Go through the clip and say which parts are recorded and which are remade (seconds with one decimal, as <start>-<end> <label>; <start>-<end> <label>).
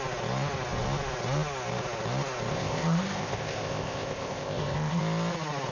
0.0-2.5 recorded; 2.5-5.0 remade; 5.0-5.7 recorded